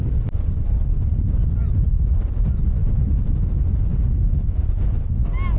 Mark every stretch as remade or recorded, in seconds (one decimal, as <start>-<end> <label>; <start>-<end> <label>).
0.0-5.6 recorded